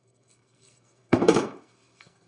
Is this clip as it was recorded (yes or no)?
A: no